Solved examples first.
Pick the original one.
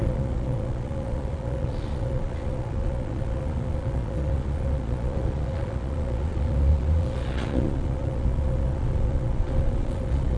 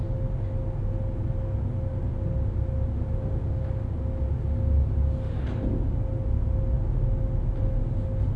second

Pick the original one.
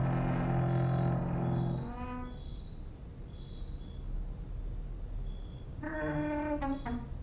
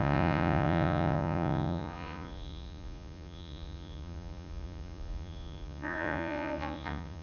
first